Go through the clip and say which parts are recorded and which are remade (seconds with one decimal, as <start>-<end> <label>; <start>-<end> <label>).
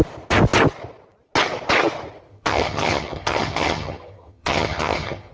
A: 0.0-2.3 recorded; 2.3-5.3 remade